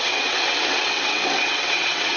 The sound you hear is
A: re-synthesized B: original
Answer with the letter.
A